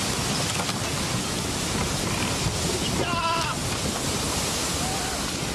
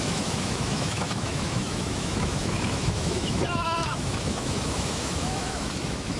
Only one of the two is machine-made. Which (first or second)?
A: second